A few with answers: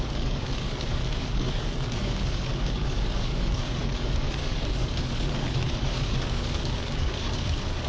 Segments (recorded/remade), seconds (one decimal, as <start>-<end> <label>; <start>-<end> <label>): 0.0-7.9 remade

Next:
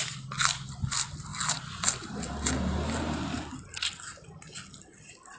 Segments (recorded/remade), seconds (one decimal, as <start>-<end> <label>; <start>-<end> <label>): 0.0-5.4 recorded

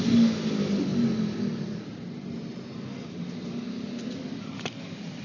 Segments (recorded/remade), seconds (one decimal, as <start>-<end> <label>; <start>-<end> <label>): 0.0-5.2 recorded

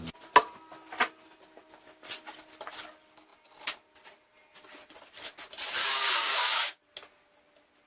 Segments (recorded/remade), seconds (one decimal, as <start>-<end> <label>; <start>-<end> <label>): 0.0-5.8 recorded; 5.8-6.8 remade; 6.8-7.9 recorded

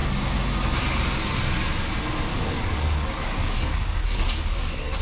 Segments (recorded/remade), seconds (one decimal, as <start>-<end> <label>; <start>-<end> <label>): 0.0-2.3 recorded; 2.3-5.0 remade

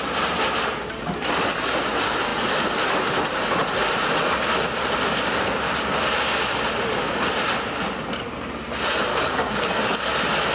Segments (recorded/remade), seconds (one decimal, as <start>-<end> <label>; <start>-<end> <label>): 0.0-9.1 recorded; 9.1-10.1 remade; 10.1-10.5 recorded

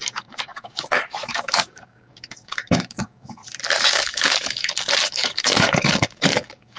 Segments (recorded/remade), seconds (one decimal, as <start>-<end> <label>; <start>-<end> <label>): 0.0-3.4 remade; 3.4-3.9 recorded; 3.9-6.8 remade

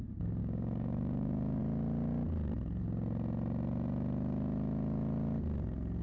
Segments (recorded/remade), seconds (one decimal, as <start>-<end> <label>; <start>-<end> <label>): 0.0-0.4 recorded; 0.4-1.6 remade; 1.6-6.0 recorded